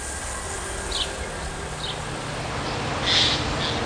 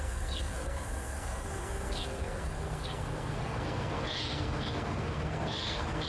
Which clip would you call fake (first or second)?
second